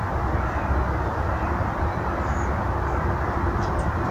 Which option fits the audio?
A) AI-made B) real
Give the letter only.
B